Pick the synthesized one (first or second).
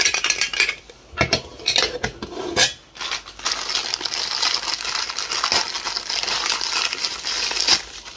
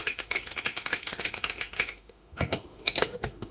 second